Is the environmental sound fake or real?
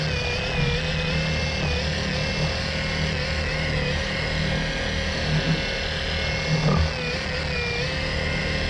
real